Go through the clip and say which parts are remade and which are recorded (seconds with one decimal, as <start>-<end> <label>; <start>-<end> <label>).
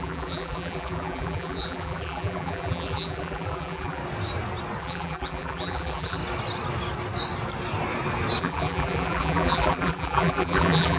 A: 0.0-4.0 remade; 4.0-4.8 recorded; 4.8-6.2 remade; 6.2-8.4 recorded; 8.4-11.0 remade